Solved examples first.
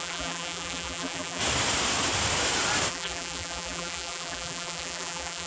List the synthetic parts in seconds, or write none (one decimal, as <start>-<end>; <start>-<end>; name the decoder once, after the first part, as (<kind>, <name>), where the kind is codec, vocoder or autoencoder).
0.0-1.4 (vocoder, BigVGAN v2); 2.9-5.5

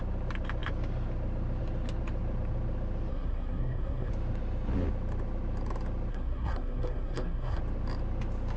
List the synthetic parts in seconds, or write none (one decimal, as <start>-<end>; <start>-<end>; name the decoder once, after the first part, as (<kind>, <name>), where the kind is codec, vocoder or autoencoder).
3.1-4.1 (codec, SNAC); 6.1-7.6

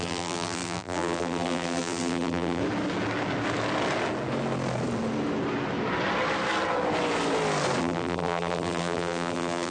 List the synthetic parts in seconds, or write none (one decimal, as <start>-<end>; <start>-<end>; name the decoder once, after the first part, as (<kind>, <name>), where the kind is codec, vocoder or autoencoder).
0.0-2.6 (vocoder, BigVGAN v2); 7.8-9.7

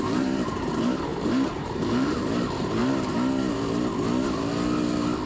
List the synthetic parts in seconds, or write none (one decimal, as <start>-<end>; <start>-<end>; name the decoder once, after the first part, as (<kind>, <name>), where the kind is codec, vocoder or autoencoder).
0.0-2.8 (vocoder, BigVGAN v2)

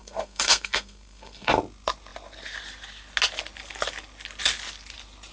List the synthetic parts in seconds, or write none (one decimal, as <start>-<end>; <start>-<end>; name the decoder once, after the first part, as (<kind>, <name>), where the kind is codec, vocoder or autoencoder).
0.0-1.5 (codec, SNAC)

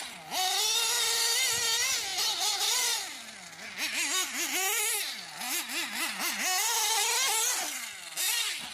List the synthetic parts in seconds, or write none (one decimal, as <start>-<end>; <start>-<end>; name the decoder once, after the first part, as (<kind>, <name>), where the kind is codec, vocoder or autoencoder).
none